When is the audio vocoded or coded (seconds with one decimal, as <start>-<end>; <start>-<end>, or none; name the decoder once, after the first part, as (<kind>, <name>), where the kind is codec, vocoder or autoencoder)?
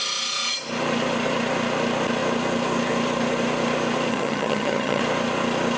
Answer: 4.1-5.0 (vocoder, HiFi-GAN)